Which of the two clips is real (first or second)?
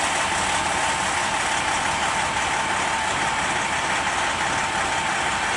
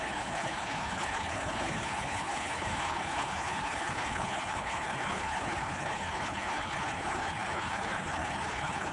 first